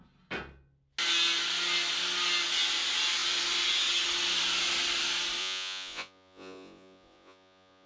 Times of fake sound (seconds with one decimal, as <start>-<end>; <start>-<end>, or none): 5.4-7.9